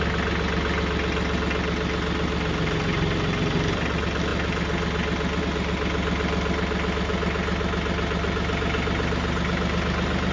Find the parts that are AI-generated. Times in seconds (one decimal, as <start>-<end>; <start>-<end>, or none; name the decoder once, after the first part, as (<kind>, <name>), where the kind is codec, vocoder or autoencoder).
none